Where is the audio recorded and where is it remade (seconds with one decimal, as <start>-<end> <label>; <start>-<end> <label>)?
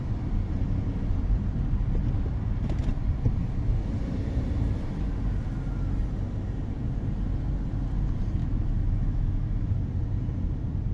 0.0-8.4 recorded; 8.4-9.7 remade; 9.7-10.9 recorded